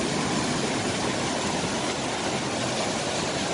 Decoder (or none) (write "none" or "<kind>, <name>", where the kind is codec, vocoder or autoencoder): none